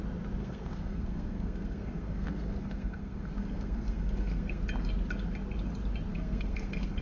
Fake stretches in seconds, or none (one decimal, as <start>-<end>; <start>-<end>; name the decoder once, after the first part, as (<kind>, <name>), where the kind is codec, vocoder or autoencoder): 0.4-4.6 (codec, SNAC); 6.1-7.0

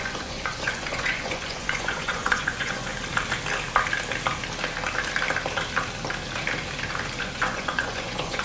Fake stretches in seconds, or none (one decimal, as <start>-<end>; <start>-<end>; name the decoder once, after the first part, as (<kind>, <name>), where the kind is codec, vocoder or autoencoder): 0.0-2.9 (vocoder, Vocos); 7.2-8.4